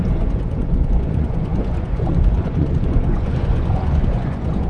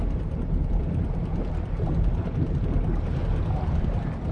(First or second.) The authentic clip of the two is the second